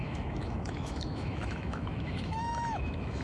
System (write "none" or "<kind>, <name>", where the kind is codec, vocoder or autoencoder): autoencoder, DAC-VAE